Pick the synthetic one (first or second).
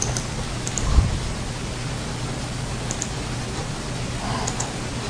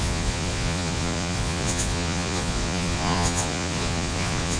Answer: second